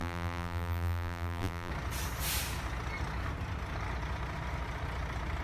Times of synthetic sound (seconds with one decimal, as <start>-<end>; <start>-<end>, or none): 0.0-1.7